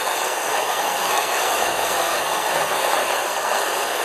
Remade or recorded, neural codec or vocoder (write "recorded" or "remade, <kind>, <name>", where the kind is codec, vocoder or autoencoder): remade, codec, SNAC